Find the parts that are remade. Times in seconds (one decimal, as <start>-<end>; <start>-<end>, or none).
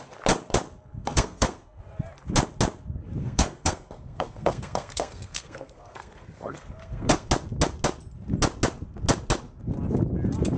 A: 1.0-1.8; 3.2-7.3